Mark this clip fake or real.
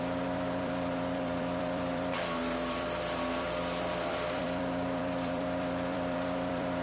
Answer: fake